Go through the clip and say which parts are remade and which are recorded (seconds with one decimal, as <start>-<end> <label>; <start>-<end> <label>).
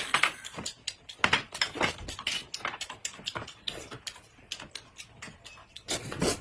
0.0-5.6 recorded; 5.6-6.4 remade